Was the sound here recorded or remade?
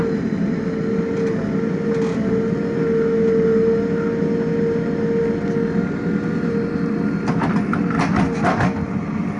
recorded